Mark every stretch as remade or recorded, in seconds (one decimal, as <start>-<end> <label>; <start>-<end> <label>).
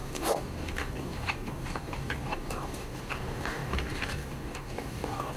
0.0-5.4 remade